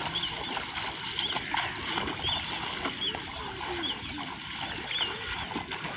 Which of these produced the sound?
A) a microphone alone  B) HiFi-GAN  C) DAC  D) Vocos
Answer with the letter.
A